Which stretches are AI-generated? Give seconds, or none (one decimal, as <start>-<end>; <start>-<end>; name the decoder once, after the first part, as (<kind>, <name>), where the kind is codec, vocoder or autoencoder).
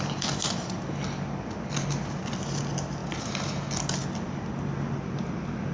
none